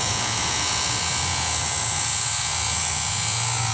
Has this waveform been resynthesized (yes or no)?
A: yes